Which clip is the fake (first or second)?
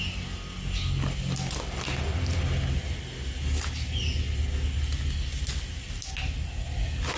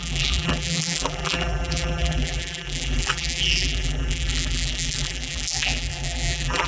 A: second